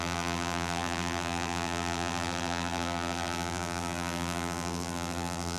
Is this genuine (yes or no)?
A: no